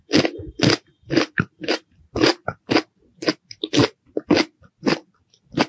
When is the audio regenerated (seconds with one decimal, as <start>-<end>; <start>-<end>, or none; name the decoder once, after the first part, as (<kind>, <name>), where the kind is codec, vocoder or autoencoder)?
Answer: none